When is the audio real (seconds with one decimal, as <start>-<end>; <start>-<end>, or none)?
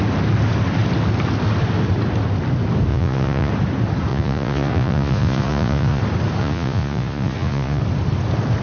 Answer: 0.0-2.9; 3.5-4.1; 6.0-6.4; 7.8-8.6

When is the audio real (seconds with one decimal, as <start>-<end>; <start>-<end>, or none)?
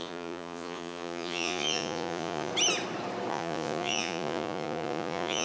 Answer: 2.5-3.3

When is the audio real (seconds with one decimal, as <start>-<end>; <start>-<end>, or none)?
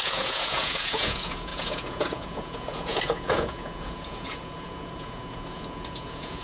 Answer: none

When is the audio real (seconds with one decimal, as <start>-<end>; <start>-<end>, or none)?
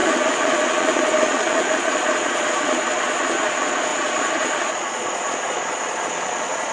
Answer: none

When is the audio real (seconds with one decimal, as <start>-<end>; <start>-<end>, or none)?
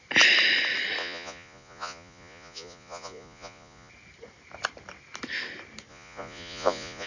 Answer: 0.0-1.0; 3.9-5.9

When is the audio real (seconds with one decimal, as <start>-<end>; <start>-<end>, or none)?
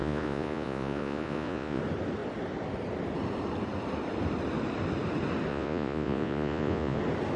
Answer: 1.8-5.5; 7.0-7.4